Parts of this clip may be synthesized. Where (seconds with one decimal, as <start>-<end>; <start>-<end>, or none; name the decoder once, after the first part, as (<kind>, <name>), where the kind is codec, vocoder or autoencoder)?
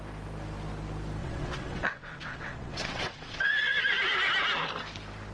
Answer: 1.2-4.0 (vocoder, WaveNeXt)